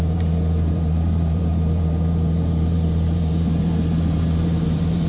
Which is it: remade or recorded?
remade